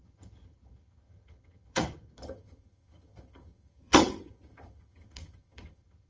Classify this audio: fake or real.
fake